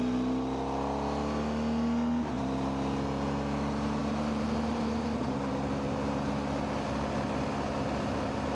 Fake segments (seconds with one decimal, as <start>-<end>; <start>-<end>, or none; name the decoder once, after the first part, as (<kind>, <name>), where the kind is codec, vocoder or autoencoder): 4.0-6.3 (vocoder, BigVGAN v2)

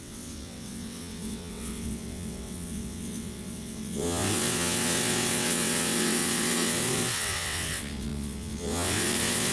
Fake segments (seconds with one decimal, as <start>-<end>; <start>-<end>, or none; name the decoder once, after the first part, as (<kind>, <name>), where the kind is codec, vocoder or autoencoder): 0.0-9.5 (vocoder, WaveNeXt)

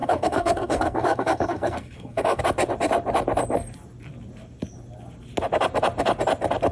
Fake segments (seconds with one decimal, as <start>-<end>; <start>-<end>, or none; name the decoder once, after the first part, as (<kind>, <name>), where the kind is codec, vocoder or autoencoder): 0.0-2.4 (codec, SNAC)